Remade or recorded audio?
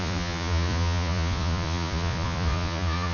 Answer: remade